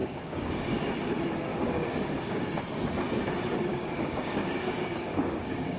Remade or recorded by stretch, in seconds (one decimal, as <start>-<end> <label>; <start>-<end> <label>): 0.0-0.5 remade; 0.5-1.5 recorded; 1.5-2.4 remade; 2.4-3.7 recorded; 3.7-5.8 remade